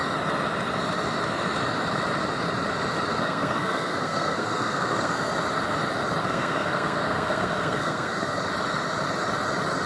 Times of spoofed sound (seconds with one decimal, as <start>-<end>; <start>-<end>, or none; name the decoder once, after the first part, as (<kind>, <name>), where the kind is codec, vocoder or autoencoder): 3.1-5.3 (codec, SNAC); 6.2-8.4